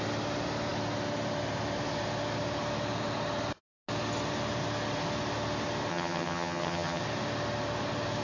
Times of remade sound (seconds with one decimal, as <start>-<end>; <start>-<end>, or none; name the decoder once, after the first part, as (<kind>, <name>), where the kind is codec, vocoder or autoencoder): 5.9-7.0 (vocoder, HiFi-GAN)